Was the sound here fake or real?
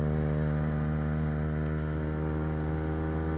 real